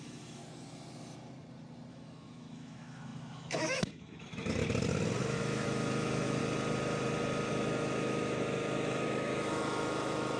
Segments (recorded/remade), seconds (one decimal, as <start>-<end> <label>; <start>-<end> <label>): 0.0-0.4 remade; 0.4-1.9 recorded; 1.9-4.6 remade; 4.6-5.2 recorded; 5.2-6.4 remade; 6.4-7.5 recorded; 7.5-10.4 remade

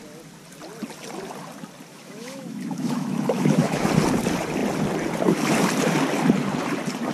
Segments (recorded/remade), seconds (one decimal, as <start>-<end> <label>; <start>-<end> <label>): 0.0-1.9 recorded; 1.9-3.9 remade; 3.9-7.1 recorded

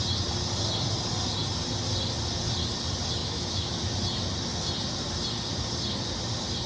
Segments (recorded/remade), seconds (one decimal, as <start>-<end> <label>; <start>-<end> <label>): 0.0-3.2 recorded; 3.2-3.7 remade; 3.7-6.7 recorded